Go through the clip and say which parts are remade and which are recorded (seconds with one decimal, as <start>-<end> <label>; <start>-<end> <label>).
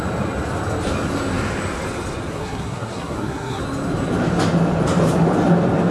0.0-2.3 recorded; 2.3-3.6 remade; 3.6-5.9 recorded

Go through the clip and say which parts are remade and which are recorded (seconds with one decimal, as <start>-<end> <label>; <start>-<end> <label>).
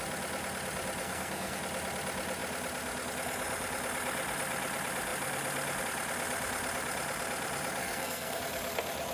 0.0-1.0 recorded; 1.0-1.6 remade; 1.6-7.8 recorded; 7.8-8.4 remade; 8.4-9.1 recorded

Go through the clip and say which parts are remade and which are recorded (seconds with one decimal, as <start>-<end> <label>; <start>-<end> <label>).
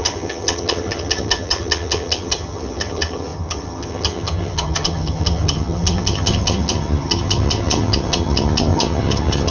0.0-9.5 remade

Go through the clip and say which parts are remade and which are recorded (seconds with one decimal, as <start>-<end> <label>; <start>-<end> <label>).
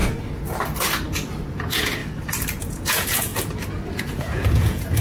0.0-1.5 recorded; 1.5-2.0 remade; 2.0-2.6 recorded; 2.6-3.3 remade; 3.3-4.0 recorded; 4.0-5.0 remade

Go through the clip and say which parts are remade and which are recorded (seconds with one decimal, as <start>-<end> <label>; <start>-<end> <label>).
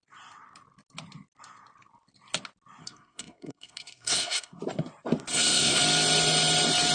0.0-2.8 recorded; 2.8-4.6 remade; 4.6-5.3 recorded; 5.3-5.8 remade; 5.8-6.9 recorded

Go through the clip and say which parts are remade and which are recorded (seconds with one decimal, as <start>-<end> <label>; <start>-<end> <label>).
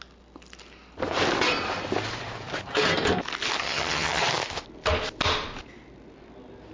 0.0-3.6 recorded; 3.6-4.2 remade; 4.2-6.7 recorded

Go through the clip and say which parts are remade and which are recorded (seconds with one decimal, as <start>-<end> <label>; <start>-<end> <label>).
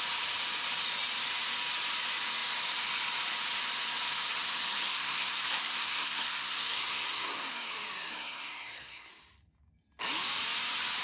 0.0-4.7 recorded; 4.7-7.7 remade; 7.7-8.1 recorded; 8.1-9.1 remade; 9.1-11.0 recorded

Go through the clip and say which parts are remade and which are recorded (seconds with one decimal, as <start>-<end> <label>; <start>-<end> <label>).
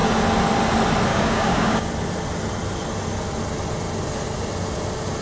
0.0-1.1 recorded; 1.1-1.9 remade; 1.9-5.2 recorded